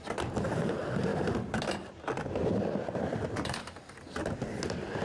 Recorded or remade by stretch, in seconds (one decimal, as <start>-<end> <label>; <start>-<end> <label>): 0.0-5.0 recorded